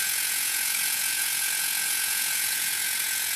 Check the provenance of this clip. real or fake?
fake